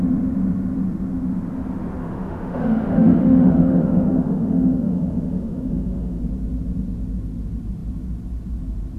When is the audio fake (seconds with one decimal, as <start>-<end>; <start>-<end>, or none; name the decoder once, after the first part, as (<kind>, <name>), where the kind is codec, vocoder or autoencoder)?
2.0-6.2 (autoencoder, DAC-VAE)